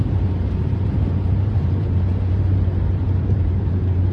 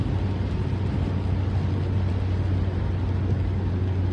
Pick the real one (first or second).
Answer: second